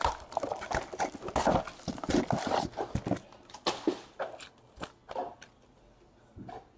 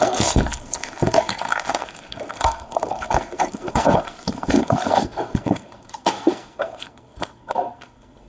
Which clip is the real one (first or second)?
first